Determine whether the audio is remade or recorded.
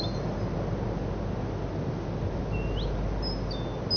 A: recorded